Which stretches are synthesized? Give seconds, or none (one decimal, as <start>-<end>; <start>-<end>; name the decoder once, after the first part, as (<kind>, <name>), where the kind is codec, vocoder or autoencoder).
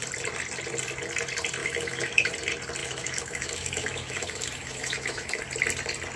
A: 1.6-2.3 (autoencoder, DAC-VAE); 2.8-5.4